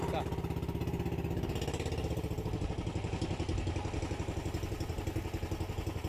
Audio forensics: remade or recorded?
recorded